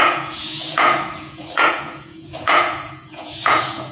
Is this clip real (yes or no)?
no